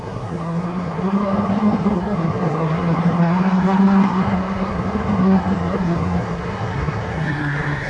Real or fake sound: fake